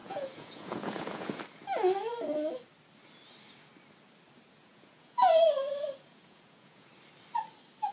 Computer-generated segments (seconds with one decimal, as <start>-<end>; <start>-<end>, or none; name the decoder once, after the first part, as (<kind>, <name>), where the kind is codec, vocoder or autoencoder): 0.0-1.4 (vocoder, Vocos); 4.6-6.9